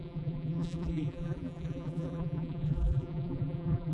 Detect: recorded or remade remade